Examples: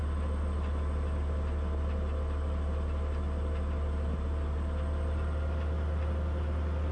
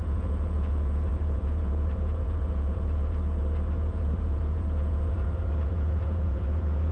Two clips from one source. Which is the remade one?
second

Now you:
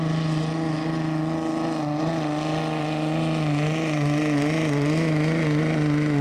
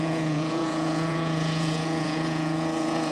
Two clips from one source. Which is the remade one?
second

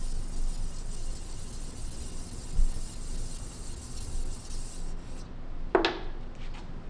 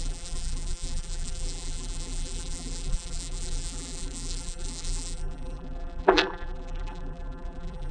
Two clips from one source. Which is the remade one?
second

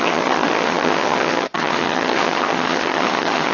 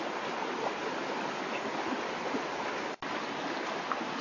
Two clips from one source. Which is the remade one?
first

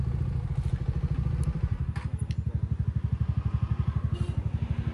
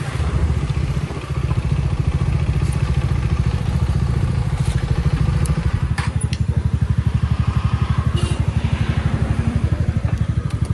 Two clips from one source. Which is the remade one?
second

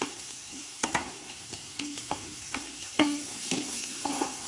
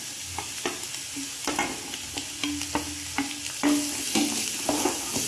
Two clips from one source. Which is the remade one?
first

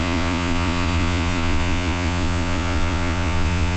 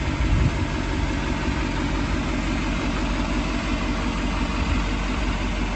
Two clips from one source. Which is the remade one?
first